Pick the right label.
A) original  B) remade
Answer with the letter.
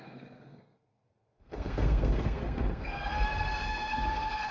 B